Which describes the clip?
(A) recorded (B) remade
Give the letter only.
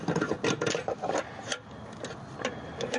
A